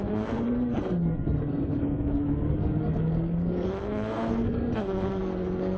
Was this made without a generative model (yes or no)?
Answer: no